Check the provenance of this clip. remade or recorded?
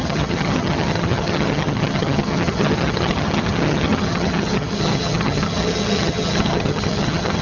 remade